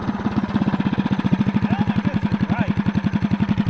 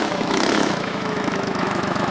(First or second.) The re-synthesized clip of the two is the second